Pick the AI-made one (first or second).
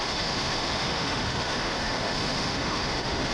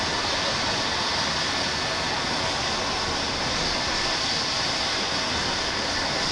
first